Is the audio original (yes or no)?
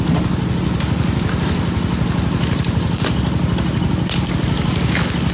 yes